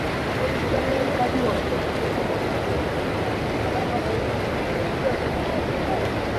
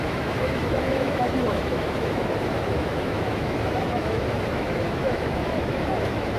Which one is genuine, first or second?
first